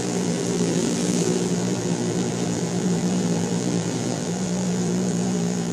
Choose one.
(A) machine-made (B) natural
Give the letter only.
A